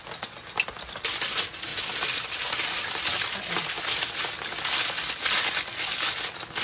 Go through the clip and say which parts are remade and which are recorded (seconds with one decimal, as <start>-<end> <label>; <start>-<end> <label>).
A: 0.0-6.6 recorded